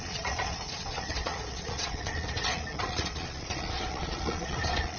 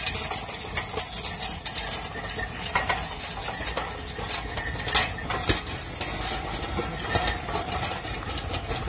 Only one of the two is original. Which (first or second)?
second